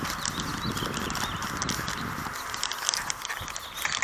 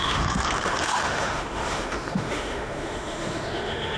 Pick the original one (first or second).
first